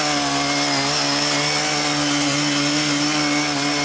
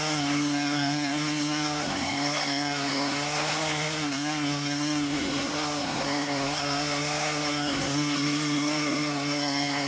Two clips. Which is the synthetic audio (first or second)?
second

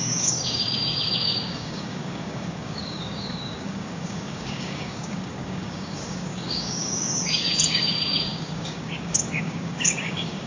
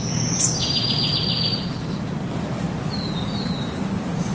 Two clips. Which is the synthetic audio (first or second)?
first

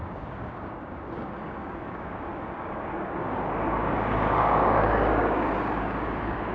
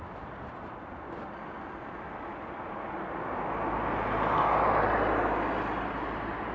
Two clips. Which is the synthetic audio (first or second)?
first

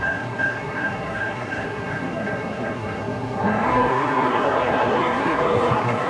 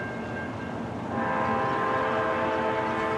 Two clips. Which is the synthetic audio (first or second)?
first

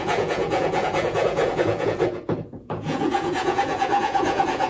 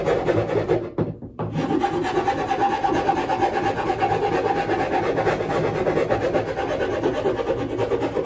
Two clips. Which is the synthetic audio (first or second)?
first